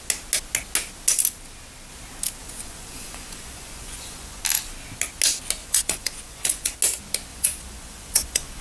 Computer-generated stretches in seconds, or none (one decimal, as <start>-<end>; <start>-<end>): 2.4-4.4; 5.6-6.7; 7.3-8.6

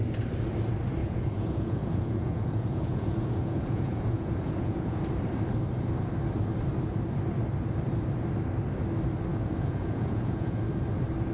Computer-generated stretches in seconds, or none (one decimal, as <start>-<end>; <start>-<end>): 1.0-5.0; 9.3-10.6

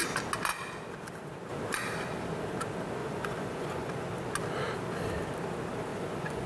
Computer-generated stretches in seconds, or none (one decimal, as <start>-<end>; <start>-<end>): 3.0-3.9; 5.9-6.5